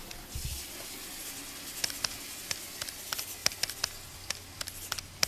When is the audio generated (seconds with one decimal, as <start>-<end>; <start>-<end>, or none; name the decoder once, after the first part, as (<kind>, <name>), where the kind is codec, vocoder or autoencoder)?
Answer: none